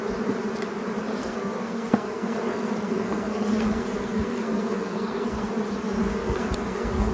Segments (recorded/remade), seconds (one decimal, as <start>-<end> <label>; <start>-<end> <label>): 0.0-1.2 recorded; 1.2-5.5 remade; 5.5-6.0 recorded; 6.0-7.1 remade